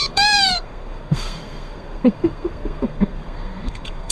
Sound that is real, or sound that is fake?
fake